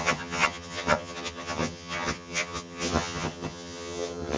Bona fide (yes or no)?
no